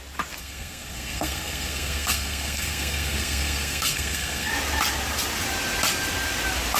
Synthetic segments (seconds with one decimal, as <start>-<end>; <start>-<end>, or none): 0.4-4.5